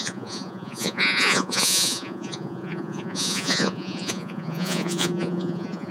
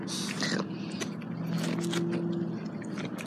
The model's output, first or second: first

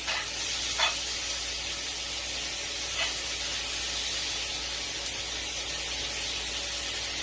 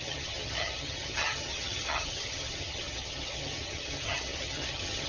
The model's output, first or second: second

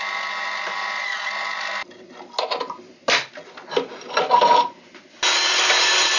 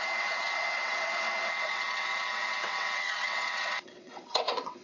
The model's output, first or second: second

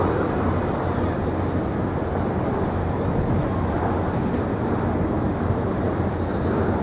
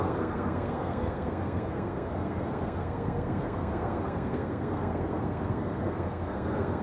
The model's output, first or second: second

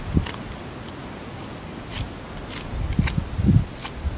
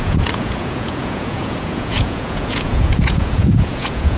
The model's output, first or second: second